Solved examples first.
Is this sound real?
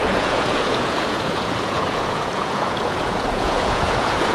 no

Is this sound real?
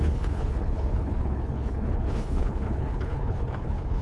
no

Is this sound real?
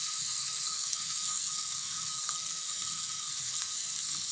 no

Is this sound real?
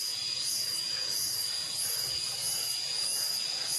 no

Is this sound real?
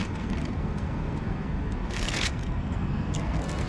no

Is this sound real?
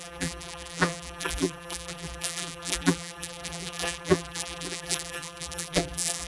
no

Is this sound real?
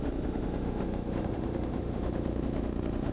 no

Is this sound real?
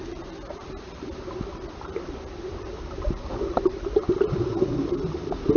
no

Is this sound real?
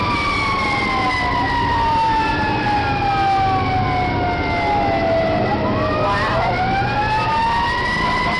yes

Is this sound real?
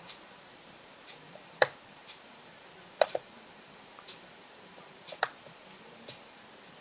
no